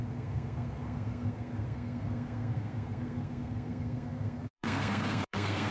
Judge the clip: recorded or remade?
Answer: remade